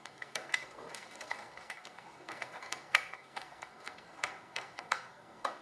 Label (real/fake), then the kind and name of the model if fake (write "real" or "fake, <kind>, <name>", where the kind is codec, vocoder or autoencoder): fake, codec, SNAC